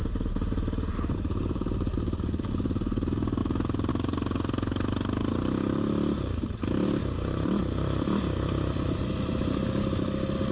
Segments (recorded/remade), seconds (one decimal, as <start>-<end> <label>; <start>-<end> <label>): 0.0-2.4 remade; 2.4-10.5 recorded